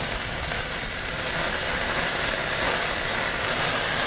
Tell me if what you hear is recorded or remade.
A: remade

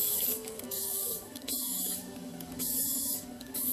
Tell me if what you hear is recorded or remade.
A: remade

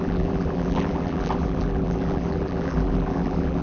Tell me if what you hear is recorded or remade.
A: remade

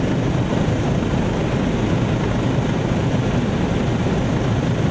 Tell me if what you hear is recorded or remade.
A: recorded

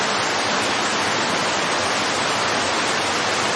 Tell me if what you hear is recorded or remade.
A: recorded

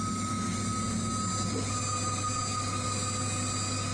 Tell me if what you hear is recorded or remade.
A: recorded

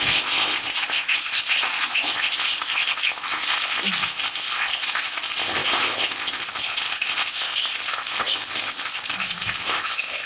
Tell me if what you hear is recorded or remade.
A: remade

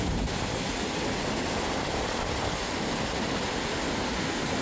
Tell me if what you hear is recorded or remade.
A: recorded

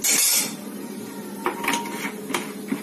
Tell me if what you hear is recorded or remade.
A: recorded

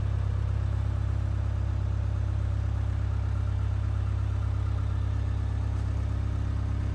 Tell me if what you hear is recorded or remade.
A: recorded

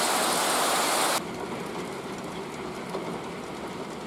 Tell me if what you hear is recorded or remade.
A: recorded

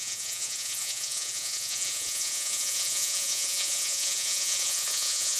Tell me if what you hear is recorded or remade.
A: remade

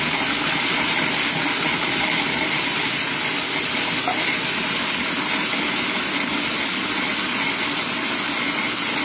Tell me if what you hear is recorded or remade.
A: recorded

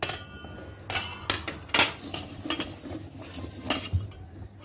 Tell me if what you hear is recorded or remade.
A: recorded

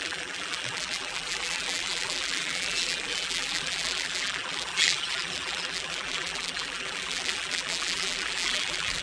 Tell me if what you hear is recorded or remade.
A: remade